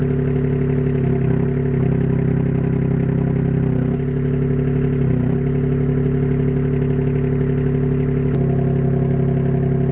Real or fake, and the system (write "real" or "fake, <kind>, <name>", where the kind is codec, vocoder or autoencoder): real